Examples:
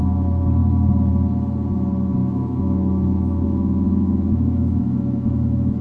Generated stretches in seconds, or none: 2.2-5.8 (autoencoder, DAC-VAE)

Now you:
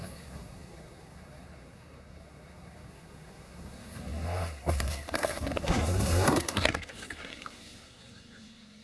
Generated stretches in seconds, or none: 0.0-8.8 (codec, SNAC)

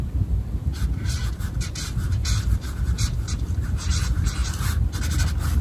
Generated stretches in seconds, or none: none

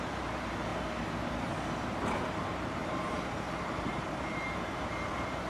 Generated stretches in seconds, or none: 0.0-0.7 (vocoder, BigVGAN v2); 1.3-5.5

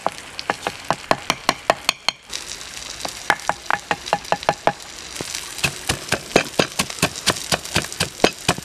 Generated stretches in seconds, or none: none

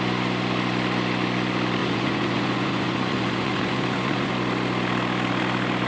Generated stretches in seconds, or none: 1.8-4.3 (vocoder, Vocos)

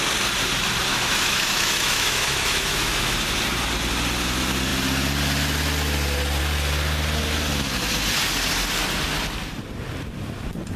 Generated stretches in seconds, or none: 0.9-3.1 (autoencoder, DAC-VAE)